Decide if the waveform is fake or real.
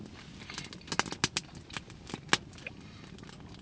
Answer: real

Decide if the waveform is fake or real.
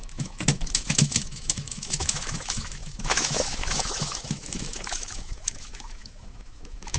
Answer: fake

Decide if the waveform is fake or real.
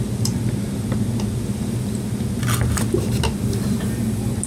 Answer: real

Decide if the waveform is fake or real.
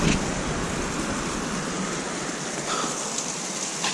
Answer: real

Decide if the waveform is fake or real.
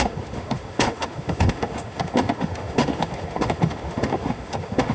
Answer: fake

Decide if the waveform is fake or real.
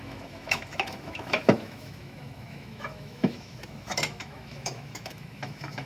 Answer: fake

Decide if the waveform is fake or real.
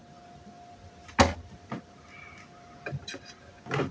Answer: real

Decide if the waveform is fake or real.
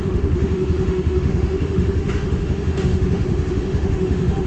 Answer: fake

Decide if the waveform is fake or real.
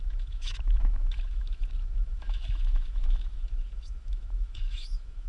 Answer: fake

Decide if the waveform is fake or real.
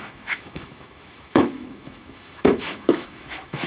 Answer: fake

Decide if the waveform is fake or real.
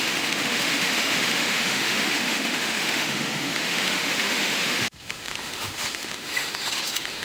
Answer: fake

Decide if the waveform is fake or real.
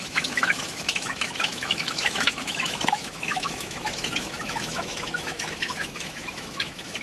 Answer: fake